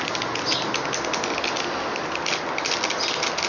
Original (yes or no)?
yes